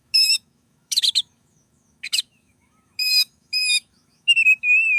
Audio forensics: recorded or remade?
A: remade